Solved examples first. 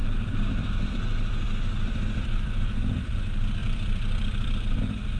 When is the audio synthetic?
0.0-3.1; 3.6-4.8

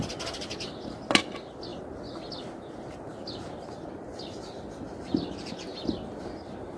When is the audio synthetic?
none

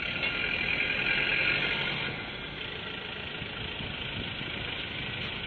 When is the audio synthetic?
none